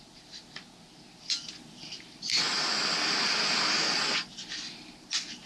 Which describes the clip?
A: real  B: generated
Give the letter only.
A